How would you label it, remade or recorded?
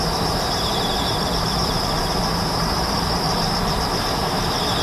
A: remade